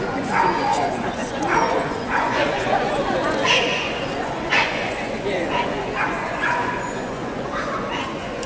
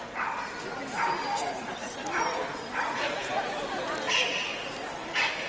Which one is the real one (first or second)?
second